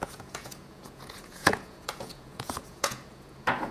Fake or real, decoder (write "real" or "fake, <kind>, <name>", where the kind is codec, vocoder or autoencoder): fake, vocoder, Vocos